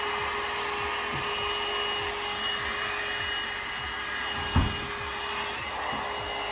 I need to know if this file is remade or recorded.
recorded